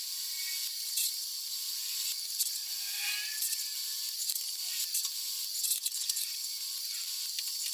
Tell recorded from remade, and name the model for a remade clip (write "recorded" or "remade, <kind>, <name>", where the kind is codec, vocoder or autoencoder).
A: remade, vocoder, BigVGAN v2